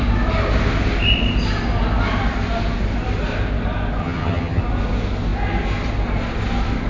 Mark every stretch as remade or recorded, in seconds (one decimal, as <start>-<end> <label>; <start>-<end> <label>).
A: 0.0-4.0 recorded; 4.0-4.6 remade; 4.6-6.9 recorded